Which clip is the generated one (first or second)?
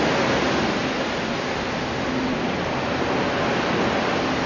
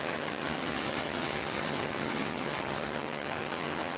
second